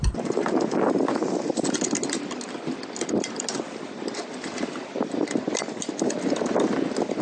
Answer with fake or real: real